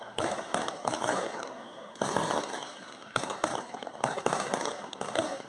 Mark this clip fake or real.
fake